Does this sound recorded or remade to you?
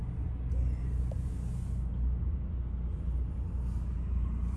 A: recorded